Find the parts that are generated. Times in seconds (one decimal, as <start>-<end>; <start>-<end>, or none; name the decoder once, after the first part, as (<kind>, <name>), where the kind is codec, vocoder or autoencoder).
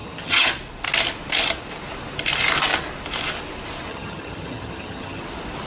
0.0-0.5 (vocoder, HiFi-GAN); 3.9-5.2